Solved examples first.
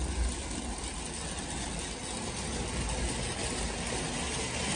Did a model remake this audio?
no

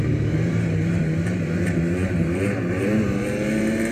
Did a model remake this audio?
yes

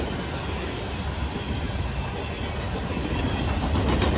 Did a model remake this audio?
no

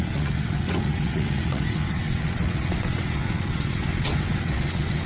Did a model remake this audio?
yes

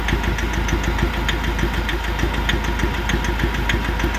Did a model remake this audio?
no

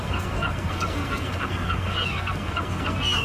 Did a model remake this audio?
yes